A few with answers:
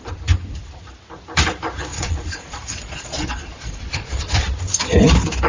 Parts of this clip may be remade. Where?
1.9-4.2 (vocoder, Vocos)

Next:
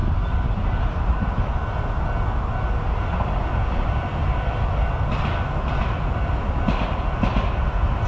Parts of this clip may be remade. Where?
none